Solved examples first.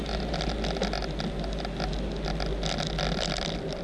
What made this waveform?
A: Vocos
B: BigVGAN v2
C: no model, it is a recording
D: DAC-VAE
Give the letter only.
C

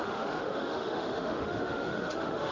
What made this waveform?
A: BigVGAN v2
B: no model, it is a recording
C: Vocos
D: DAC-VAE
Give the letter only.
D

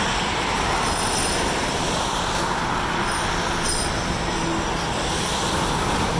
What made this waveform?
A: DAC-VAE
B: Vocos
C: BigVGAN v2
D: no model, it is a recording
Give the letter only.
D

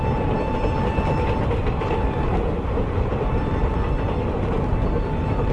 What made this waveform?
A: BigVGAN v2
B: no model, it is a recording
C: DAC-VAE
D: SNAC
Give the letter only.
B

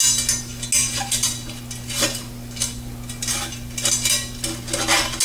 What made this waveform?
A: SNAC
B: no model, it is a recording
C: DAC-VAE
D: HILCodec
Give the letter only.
B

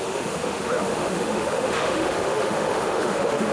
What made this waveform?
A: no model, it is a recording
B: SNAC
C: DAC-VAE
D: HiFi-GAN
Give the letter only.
C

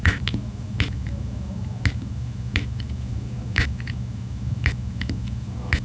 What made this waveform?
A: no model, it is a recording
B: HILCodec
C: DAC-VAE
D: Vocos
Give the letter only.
C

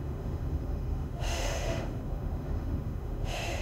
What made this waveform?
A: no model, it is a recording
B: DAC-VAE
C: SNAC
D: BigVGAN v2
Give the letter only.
B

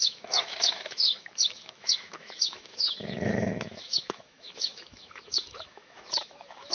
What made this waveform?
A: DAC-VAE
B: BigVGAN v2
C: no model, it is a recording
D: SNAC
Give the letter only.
A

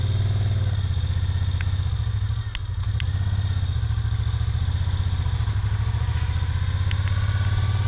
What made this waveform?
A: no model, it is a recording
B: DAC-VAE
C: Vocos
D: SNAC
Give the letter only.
A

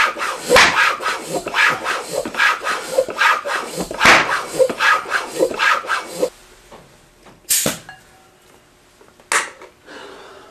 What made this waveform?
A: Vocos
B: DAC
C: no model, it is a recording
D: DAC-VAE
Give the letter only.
C